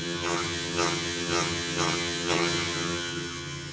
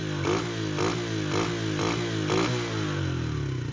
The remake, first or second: first